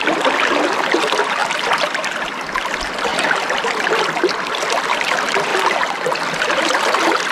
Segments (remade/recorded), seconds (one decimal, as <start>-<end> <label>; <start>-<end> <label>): 0.0-1.4 remade; 1.4-2.6 recorded; 2.6-5.5 remade; 5.5-6.6 recorded; 6.6-7.3 remade